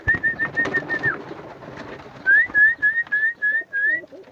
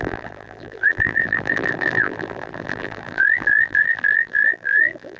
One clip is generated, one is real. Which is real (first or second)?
first